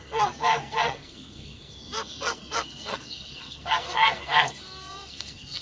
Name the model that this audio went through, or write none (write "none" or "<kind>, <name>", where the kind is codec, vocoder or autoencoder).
codec, SNAC